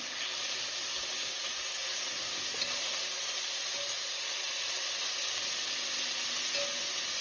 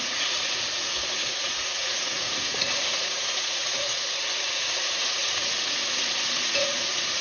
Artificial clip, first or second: second